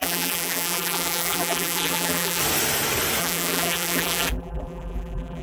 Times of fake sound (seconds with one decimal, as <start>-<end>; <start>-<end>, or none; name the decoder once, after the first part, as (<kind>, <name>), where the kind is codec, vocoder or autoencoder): 0.0-2.4 (vocoder, BigVGAN v2); 3.2-5.4